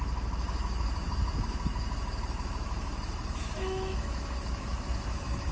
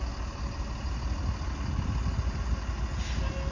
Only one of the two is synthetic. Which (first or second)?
first